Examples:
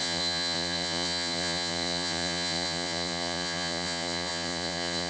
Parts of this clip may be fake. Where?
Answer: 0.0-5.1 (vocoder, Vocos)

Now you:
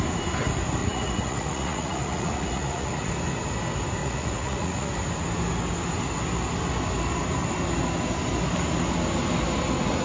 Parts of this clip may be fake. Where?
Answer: 0.8-3.1 (vocoder, Vocos); 4.0-4.9